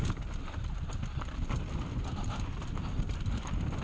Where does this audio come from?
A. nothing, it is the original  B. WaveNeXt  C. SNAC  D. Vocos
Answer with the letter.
A